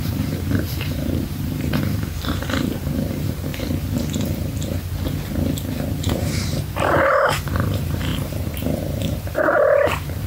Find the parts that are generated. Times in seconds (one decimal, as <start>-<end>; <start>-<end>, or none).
0.0-3.5; 6.0-10.3